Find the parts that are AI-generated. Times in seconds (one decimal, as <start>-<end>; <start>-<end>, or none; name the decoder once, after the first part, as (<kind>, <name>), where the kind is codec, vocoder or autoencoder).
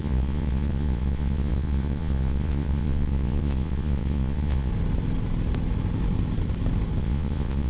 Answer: 0.0-4.7 (vocoder, Vocos); 7.0-7.7